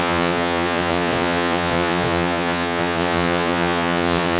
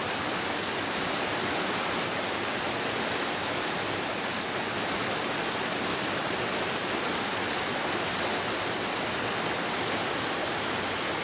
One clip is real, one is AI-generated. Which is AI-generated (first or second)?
first